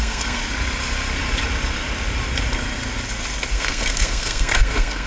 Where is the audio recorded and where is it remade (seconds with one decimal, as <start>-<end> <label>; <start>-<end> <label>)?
0.0-0.4 remade; 0.4-3.5 recorded; 3.5-5.1 remade